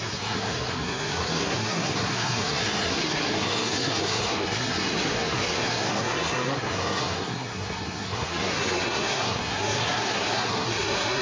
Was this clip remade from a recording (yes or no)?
yes